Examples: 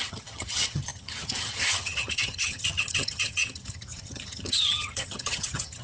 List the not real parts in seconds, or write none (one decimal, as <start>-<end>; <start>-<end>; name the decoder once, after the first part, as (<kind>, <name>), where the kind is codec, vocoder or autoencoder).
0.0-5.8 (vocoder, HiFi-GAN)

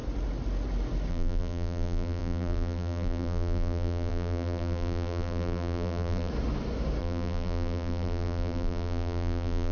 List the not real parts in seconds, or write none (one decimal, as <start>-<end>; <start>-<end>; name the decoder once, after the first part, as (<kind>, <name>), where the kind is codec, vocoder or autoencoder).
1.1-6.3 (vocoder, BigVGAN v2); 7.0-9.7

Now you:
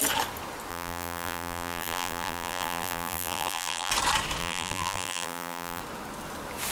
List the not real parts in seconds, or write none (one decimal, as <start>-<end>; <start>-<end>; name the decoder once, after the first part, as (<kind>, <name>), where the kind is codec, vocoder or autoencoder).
0.7-3.9 (vocoder, BigVGAN v2); 4.4-5.8